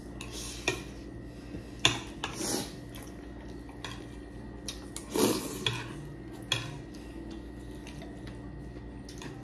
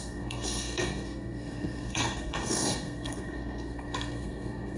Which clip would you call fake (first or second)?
second